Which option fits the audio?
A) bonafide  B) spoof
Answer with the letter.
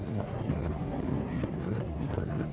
B